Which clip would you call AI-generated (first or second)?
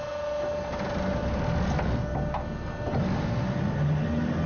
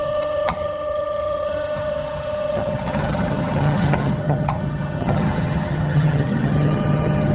second